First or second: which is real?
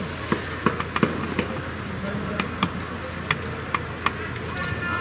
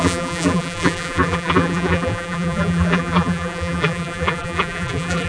first